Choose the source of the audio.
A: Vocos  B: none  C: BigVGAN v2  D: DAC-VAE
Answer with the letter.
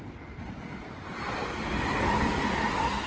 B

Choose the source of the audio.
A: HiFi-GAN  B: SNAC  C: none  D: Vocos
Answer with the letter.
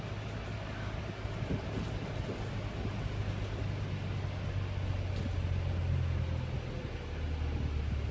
C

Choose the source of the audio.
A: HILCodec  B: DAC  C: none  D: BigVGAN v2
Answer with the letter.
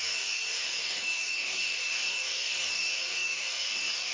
B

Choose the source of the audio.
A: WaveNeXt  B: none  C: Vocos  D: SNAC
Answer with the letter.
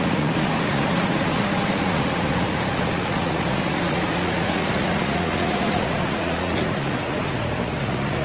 C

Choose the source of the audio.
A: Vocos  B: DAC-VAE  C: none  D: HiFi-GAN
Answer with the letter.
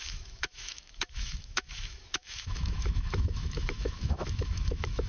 B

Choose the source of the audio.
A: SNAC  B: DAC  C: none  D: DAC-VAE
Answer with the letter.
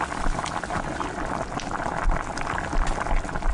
C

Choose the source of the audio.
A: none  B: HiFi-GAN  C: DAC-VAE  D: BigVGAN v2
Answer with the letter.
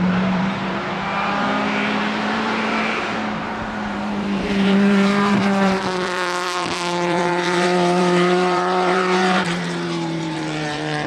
D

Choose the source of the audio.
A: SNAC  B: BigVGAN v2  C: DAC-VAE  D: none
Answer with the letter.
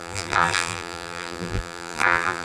B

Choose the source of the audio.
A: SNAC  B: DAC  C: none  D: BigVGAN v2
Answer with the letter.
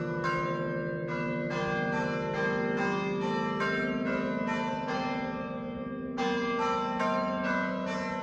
C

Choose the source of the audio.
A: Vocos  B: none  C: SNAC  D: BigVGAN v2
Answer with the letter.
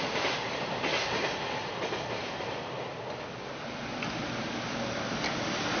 B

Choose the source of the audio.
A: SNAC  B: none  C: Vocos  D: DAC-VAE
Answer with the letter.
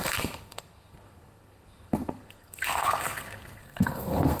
A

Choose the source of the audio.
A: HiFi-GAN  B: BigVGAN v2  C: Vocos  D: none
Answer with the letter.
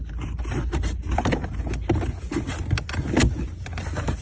D